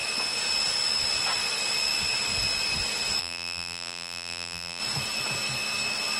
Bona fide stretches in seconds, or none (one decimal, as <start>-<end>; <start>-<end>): 0.0-3.2; 4.8-6.2